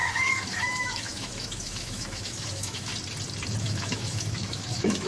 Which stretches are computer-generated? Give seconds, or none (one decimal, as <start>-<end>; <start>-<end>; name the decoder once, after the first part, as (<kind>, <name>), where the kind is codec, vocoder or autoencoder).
0.0-2.9 (autoencoder, DAC-VAE); 3.6-5.1